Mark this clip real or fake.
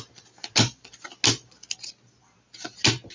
real